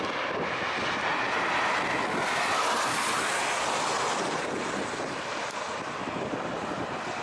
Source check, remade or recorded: recorded